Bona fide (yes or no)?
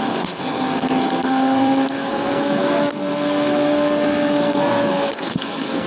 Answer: no